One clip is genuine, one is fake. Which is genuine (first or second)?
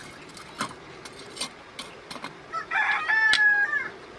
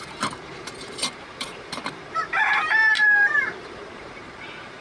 first